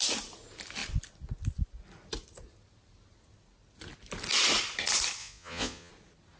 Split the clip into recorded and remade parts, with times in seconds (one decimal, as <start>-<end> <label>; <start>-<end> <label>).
0.0-5.2 recorded; 5.2-5.9 remade; 5.9-6.4 recorded